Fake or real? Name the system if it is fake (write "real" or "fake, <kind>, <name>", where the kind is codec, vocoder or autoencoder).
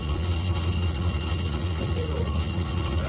fake, vocoder, Vocos